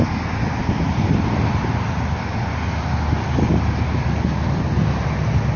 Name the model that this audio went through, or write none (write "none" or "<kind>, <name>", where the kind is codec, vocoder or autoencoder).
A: none